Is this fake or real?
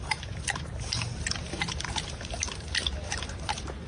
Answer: fake